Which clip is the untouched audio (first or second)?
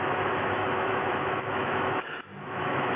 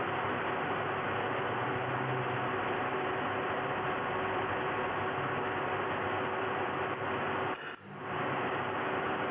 second